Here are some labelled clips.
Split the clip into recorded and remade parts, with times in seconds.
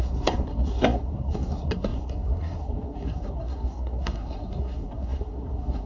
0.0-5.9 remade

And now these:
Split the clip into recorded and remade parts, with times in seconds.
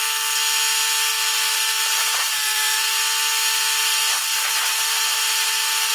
0.0-1.1 recorded; 1.1-3.0 remade; 3.0-3.8 recorded; 3.8-5.9 remade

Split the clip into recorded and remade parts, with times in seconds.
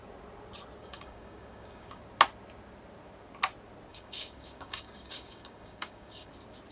0.0-0.8 recorded; 0.8-2.0 remade; 2.0-3.9 recorded; 3.9-6.3 remade; 6.3-6.7 recorded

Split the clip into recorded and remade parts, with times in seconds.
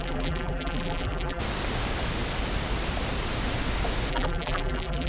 0.0-1.4 remade; 1.4-4.1 recorded; 4.1-5.1 remade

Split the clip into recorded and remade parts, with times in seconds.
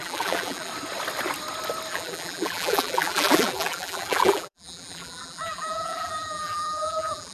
0.0-0.7 remade; 0.7-1.9 recorded; 1.9-7.3 remade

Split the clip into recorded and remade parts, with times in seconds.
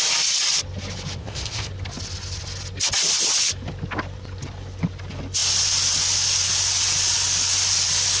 0.0-1.2 recorded; 1.2-1.7 remade; 1.7-8.2 recorded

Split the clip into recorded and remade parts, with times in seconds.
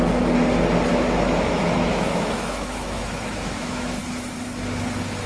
0.0-0.9 recorded; 0.9-4.0 remade; 4.0-5.3 recorded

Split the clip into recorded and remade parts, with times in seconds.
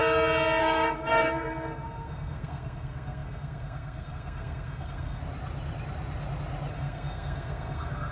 0.0-0.6 recorded; 0.6-5.2 remade; 5.2-6.7 recorded; 6.7-8.1 remade